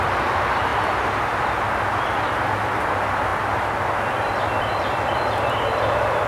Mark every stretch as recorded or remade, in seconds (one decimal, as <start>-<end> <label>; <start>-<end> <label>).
0.0-6.3 recorded